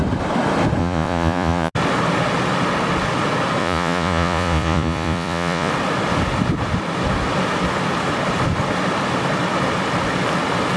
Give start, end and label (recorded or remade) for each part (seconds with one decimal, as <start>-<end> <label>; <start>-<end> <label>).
0.0-0.8 recorded; 0.8-1.7 remade; 1.7-3.6 recorded; 3.6-5.7 remade; 5.7-10.8 recorded